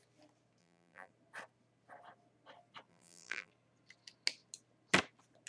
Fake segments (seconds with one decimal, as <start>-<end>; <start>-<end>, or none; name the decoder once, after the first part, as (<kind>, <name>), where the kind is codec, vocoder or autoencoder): 0.6-1.1 (vocoder, BigVGAN v2); 2.9-3.5